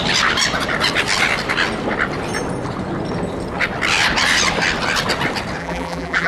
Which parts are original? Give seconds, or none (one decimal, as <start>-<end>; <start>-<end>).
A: 0.0-5.6